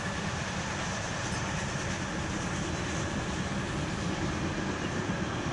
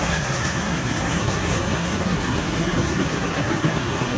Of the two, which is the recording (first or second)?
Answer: first